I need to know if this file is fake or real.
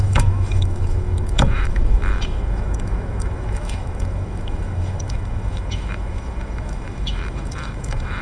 fake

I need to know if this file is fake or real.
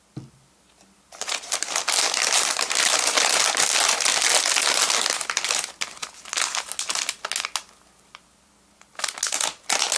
real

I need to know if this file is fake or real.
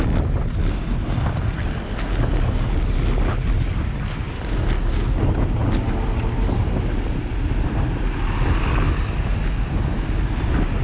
real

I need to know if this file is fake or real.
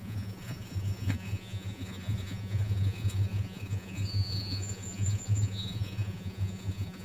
fake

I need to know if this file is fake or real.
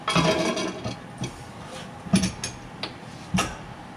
real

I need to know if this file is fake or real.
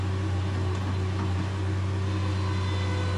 real